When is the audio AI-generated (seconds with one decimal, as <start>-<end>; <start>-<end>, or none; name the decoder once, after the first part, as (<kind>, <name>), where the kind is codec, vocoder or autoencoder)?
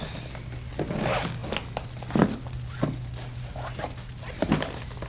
none